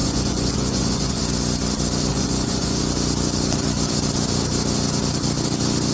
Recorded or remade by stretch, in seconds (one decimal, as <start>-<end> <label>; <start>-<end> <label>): 0.0-1.2 remade; 1.2-2.1 recorded; 2.1-2.8 remade; 2.8-5.9 recorded